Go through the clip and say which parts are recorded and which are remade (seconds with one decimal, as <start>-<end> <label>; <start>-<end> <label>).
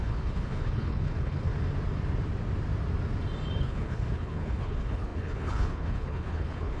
0.0-1.5 remade; 1.5-3.6 recorded; 3.6-6.8 remade